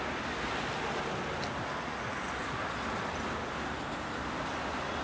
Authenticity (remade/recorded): recorded